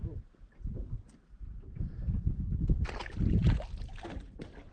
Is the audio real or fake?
real